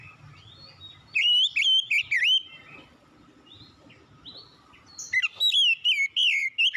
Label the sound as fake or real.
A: real